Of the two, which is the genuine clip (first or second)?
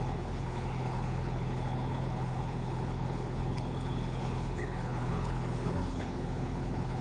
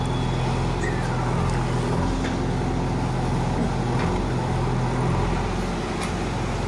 second